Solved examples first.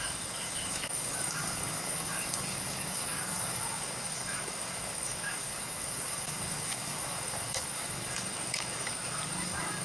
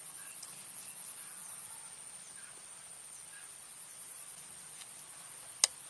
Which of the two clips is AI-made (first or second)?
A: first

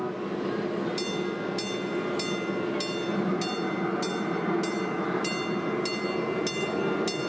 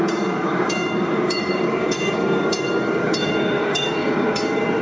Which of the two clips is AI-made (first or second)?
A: second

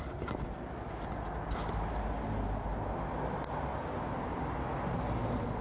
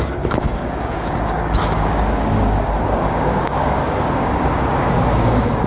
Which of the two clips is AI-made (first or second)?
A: second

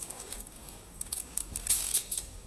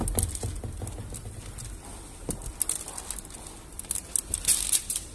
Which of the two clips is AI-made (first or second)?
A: first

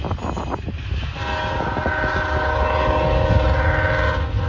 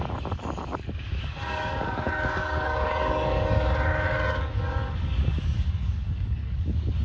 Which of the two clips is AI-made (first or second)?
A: second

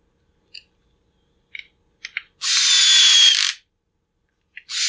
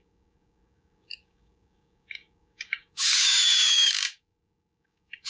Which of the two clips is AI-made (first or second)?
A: second